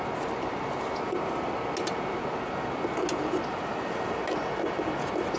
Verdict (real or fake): real